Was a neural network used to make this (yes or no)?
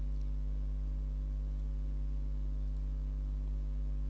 no